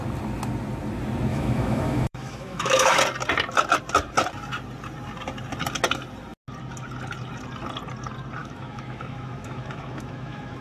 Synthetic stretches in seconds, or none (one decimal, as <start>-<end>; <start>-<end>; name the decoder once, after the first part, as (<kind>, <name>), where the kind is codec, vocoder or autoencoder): 1.3-3.0 (autoencoder, DAC-VAE); 8.4-10.6